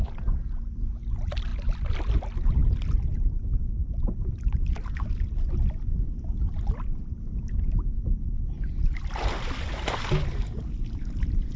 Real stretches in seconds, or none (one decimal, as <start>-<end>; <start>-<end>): 0.0-11.6